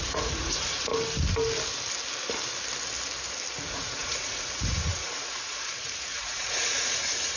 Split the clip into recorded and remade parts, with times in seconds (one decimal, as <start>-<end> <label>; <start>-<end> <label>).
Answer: 0.0-0.9 remade; 0.9-3.7 recorded; 3.7-7.4 remade